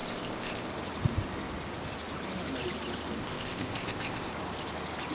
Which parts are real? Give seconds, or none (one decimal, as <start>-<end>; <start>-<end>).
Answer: 0.7-3.2; 4.3-5.1